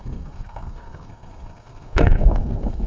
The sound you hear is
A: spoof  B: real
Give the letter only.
A